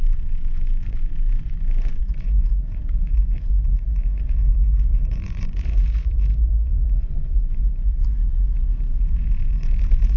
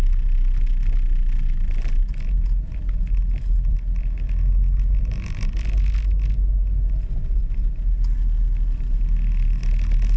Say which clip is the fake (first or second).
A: first